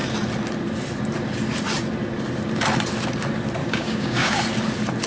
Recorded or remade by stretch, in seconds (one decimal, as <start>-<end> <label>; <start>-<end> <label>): 0.0-3.6 recorded; 3.6-4.4 remade; 4.4-5.1 recorded